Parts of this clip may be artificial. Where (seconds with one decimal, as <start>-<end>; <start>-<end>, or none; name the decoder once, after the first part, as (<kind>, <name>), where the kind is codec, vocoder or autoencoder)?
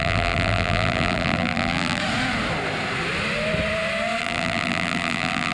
0.0-2.0 (vocoder, BigVGAN v2); 4.2-5.5